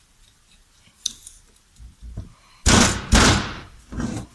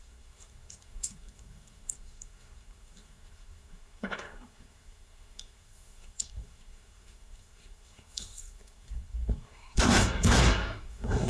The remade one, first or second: second